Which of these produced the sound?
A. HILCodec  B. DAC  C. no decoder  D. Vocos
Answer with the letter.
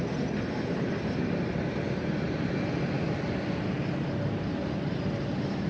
C